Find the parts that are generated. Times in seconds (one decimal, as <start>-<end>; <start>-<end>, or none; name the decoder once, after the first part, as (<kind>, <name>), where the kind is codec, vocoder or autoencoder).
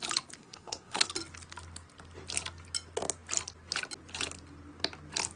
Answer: 0.4-1.1 (codec, SNAC)